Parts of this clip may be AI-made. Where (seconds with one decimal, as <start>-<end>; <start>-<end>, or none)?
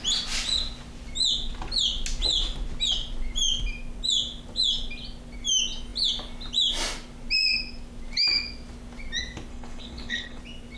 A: 9.5-10.4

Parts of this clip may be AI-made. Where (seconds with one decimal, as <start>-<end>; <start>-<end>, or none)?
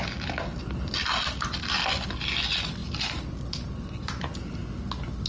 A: none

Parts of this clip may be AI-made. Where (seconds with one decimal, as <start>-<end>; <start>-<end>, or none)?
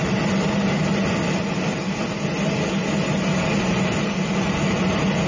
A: none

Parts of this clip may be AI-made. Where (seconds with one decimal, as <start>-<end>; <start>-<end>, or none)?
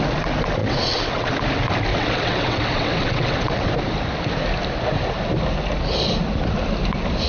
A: 0.6-1.3; 1.9-3.7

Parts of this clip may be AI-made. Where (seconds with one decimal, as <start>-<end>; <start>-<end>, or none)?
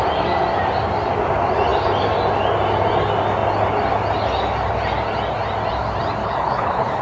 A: 6.2-7.0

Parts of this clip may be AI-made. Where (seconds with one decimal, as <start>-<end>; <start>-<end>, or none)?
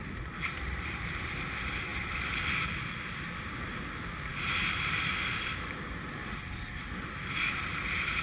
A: 0.0-1.9; 2.6-6.2; 6.8-8.2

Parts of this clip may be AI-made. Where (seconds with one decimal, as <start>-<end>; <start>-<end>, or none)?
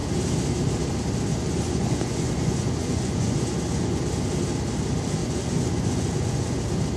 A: 1.3-4.0; 5.2-6.6